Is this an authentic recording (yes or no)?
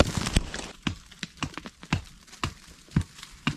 yes